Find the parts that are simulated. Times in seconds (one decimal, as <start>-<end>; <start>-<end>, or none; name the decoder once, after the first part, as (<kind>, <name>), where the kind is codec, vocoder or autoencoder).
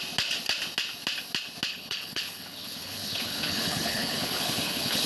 1.7-5.1 (codec, HILCodec)